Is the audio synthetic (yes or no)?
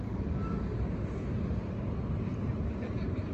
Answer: no